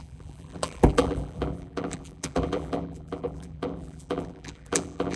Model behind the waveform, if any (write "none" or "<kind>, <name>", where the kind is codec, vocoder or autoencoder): vocoder, BigVGAN v2